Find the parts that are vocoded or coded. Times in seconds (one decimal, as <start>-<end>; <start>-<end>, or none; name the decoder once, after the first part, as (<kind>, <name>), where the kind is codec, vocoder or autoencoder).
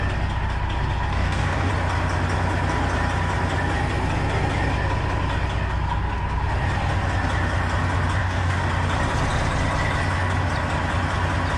1.1-1.7 (codec, DAC); 8.2-8.7